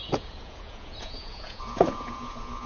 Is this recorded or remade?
remade